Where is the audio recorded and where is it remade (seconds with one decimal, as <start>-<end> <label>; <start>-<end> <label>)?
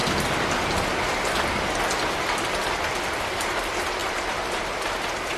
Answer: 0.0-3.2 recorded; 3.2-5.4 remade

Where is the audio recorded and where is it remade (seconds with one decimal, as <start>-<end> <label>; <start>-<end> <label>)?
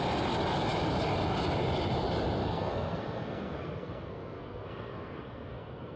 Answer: 0.0-2.4 recorded; 2.4-6.0 remade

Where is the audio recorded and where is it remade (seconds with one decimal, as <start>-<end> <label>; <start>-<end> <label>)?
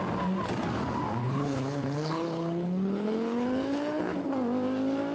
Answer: 0.0-1.2 recorded; 1.2-4.3 remade; 4.3-5.1 recorded